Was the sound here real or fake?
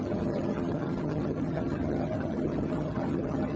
fake